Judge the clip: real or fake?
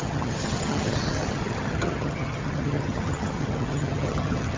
fake